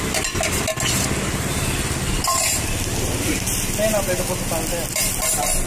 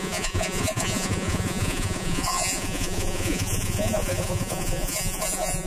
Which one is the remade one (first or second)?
second